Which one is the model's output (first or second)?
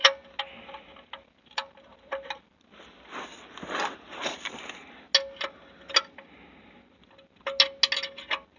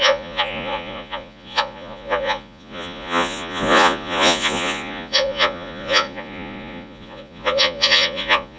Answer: second